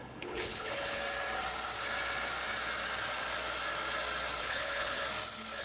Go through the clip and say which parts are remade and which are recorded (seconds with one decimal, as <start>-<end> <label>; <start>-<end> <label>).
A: 0.0-1.0 remade; 1.0-4.4 recorded; 4.4-5.0 remade; 5.0-5.6 recorded